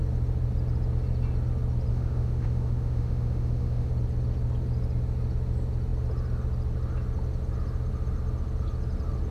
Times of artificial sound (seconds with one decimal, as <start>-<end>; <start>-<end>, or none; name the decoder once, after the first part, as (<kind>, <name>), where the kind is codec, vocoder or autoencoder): 1.9-3.9 (autoencoder, DAC-VAE)